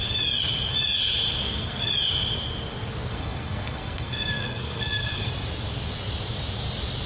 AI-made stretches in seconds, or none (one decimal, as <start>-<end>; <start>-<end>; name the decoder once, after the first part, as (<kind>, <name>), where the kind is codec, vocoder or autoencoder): 1.4-1.9 (codec, SNAC); 3.1-5.3